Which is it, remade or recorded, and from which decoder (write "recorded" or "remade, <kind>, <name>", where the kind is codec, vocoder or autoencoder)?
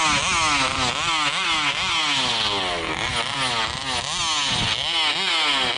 recorded